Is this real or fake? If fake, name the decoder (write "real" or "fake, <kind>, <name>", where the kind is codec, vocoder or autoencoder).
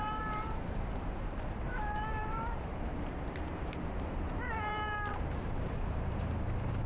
fake, vocoder, BigVGAN v2